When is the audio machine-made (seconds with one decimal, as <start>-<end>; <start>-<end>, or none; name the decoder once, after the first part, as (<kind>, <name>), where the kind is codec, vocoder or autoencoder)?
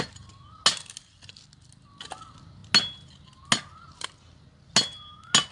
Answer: none